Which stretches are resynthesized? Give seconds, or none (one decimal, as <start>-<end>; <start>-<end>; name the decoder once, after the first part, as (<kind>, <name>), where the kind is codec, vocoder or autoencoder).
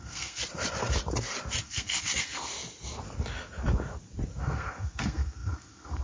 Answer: 0.0-0.4 (codec, SNAC); 1.6-2.5; 4.4-6.0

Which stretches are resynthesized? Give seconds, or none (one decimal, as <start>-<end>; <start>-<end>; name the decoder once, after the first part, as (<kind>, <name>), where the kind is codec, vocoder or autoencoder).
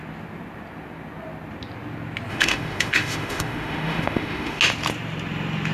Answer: 2.3-4.6 (autoencoder, DAC-VAE)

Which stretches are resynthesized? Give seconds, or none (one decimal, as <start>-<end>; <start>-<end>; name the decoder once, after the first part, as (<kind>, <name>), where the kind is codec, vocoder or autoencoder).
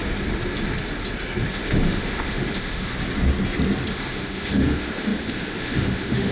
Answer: 1.5-2.9 (autoencoder, DAC-VAE); 3.9-6.3